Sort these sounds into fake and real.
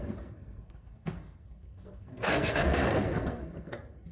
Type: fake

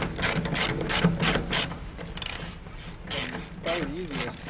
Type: real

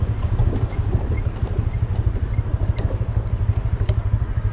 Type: real